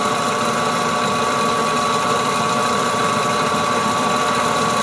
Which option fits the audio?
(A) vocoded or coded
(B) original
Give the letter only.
A